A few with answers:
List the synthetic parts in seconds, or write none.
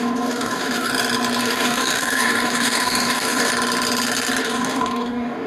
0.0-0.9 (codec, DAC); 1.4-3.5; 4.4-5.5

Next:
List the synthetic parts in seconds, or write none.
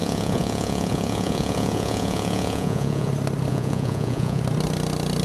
0.0-3.1 (vocoder, Vocos); 3.5-4.4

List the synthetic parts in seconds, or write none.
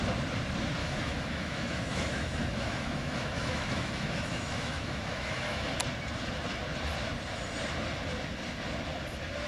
0.8-5.7 (autoencoder, DAC-VAE)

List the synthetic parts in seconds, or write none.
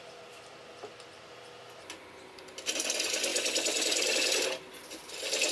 none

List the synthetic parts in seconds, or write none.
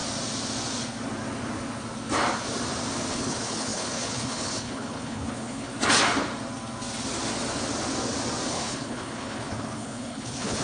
3.1-5.7 (codec, HILCodec); 8.5-10.6